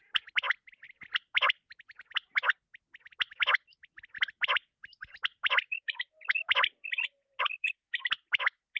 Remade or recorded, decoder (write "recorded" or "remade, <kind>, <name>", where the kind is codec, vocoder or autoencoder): recorded